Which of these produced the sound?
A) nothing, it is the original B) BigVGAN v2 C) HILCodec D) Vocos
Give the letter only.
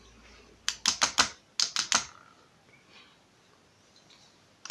A